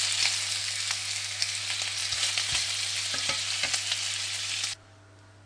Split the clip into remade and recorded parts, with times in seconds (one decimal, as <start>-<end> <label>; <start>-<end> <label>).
0.0-0.6 recorded; 0.6-1.6 remade; 1.6-5.5 recorded